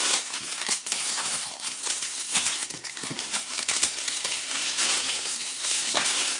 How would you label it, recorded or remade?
remade